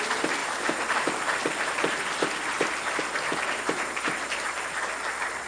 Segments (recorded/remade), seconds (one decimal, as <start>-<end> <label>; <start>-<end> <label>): 0.0-5.5 recorded